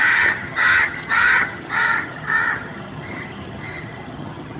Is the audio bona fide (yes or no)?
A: no